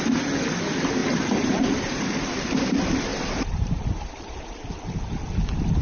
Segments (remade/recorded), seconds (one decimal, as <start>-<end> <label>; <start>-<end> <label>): 0.0-1.0 recorded; 1.0-2.3 remade; 2.3-3.1 recorded; 3.1-4.6 remade; 4.6-5.8 recorded